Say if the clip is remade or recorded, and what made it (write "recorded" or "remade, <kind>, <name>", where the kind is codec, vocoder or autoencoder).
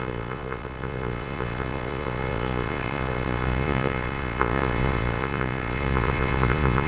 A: remade, vocoder, Vocos